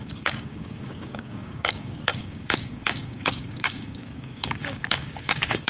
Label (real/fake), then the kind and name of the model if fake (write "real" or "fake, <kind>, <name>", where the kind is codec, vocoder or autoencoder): fake, codec, DAC